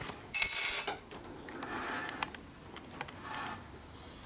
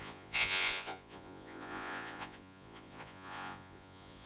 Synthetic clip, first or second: second